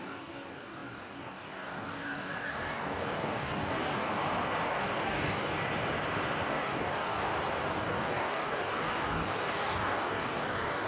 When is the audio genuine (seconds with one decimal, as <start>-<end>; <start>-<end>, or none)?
4.2-4.7; 5.5-6.5; 7.3-7.8